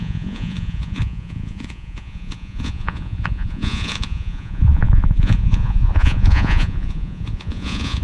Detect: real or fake fake